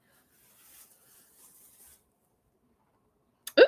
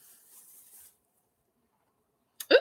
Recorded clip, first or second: first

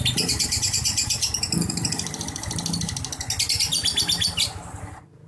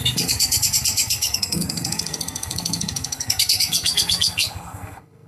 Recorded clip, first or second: first